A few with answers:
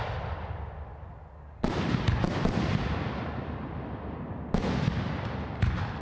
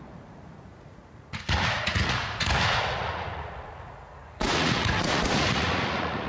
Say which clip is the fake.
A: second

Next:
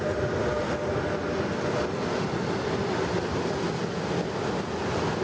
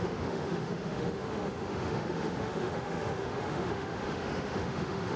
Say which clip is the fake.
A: second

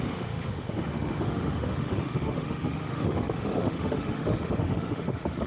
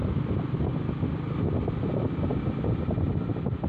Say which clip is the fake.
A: first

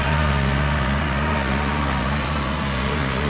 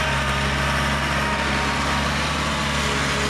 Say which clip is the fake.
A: first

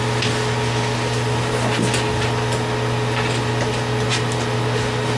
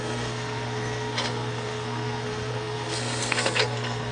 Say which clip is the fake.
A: second